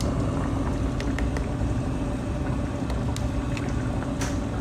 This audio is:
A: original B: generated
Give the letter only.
A